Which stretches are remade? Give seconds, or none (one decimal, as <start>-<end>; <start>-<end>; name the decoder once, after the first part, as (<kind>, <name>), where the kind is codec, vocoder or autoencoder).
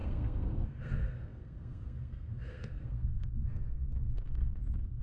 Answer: 0.0-5.0 (codec, SNAC)